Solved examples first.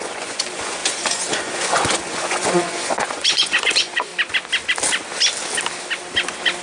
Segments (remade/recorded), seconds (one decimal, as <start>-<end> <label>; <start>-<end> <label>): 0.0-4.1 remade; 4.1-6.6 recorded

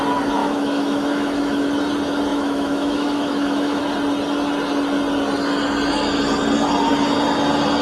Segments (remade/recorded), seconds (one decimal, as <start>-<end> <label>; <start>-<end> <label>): 0.0-0.4 recorded; 0.4-1.7 remade; 1.7-2.3 recorded; 2.3-3.8 remade; 3.8-7.8 recorded

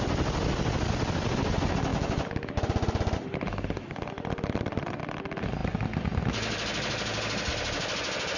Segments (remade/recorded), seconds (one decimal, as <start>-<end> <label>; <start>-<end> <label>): 0.0-8.4 recorded

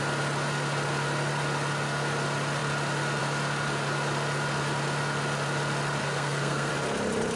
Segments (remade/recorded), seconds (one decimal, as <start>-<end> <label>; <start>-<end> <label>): 0.0-6.0 recorded; 6.0-6.7 remade; 6.7-7.4 recorded